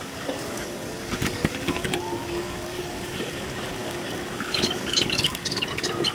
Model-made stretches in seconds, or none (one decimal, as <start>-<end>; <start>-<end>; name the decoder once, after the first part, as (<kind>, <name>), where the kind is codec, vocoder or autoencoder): 0.0-6.1 (codec, DAC)